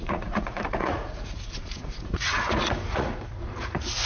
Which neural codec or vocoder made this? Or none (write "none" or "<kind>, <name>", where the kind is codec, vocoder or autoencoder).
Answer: vocoder, Vocos